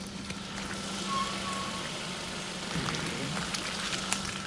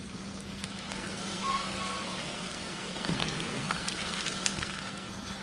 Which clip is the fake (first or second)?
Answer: second